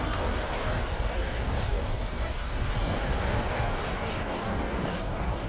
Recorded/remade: remade